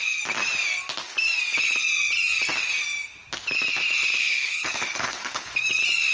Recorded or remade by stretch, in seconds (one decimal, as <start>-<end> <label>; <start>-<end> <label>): 0.0-4.1 recorded; 4.1-5.5 remade; 5.5-6.1 recorded